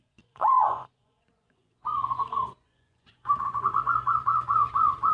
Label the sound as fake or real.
fake